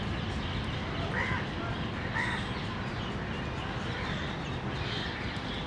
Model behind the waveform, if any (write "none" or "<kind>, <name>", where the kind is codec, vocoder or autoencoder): none